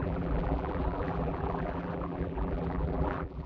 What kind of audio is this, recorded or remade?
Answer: remade